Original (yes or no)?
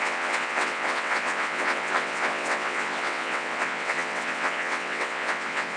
no